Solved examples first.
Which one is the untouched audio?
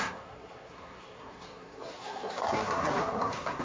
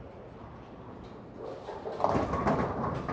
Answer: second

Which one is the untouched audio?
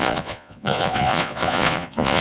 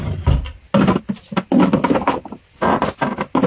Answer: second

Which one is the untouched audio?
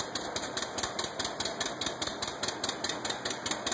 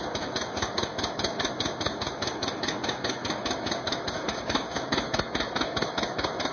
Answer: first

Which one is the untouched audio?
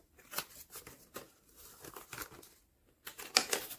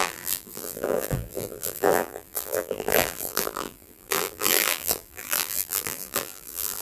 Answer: first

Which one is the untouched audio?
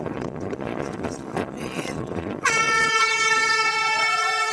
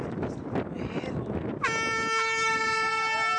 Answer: second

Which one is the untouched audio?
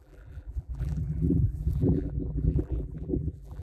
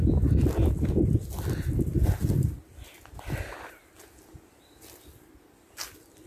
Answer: second